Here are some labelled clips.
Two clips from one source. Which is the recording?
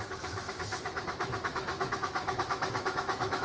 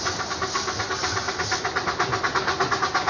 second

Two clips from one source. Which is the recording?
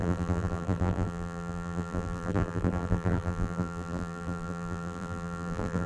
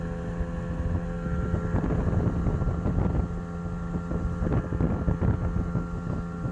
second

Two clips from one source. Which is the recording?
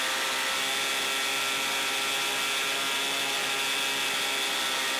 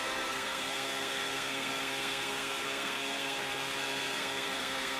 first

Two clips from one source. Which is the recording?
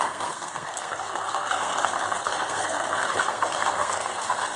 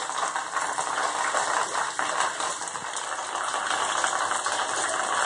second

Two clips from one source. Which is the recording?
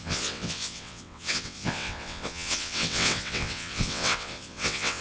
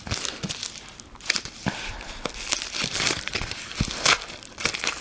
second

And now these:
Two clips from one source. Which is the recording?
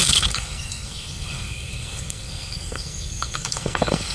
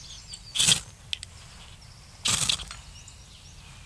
second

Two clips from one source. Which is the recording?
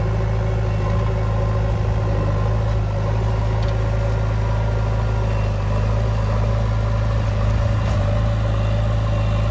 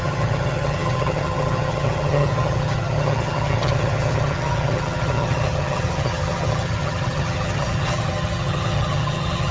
first